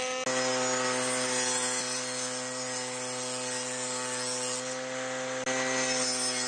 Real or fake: real